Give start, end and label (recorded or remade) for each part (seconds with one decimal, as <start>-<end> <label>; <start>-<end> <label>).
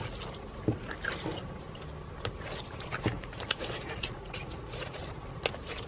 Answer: 0.0-3.1 recorded; 3.1-5.0 remade; 5.0-5.9 recorded